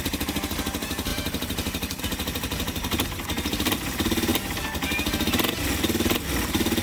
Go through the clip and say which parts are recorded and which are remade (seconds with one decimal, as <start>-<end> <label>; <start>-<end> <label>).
0.0-1.1 recorded; 1.1-2.0 remade; 2.0-6.8 recorded